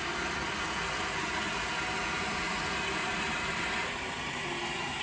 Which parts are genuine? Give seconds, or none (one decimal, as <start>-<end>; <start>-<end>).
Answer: 0.0-3.0; 4.3-5.0